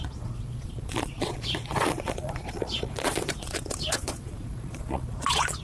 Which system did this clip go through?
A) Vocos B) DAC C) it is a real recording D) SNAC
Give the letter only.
A